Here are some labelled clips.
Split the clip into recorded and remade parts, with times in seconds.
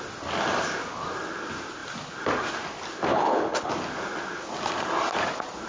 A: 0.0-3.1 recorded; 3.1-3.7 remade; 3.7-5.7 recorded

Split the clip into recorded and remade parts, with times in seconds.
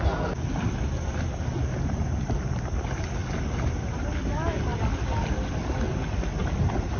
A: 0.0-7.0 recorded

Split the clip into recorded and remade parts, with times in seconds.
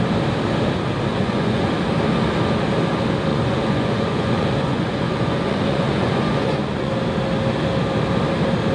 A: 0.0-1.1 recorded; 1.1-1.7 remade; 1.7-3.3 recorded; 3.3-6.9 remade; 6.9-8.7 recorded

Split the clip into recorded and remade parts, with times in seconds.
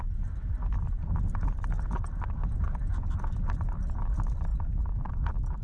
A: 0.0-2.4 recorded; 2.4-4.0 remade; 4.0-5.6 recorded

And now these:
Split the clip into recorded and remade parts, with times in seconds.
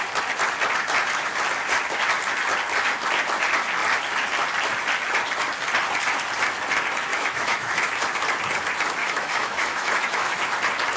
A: 0.0-7.1 recorded; 7.1-7.9 remade; 7.9-9.0 recorded; 9.0-10.4 remade; 10.4-11.0 recorded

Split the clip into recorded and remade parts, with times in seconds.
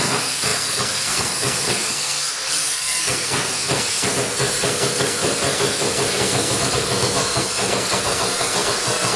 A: 0.0-9.2 remade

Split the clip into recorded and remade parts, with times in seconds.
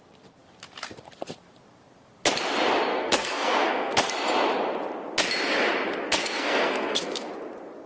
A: 0.0-2.9 recorded; 2.9-4.1 remade; 4.1-6.2 recorded; 6.2-7.3 remade; 7.3-7.9 recorded